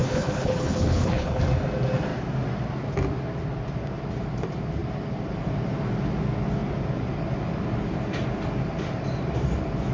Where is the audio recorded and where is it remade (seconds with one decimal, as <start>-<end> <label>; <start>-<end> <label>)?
0.0-1.4 remade; 1.4-9.9 recorded